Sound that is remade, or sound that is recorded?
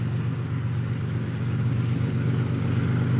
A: remade